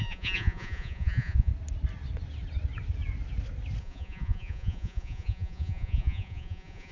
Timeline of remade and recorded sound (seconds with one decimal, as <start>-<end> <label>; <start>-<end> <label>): 0.0-1.5 remade; 1.5-3.8 recorded; 3.8-6.9 remade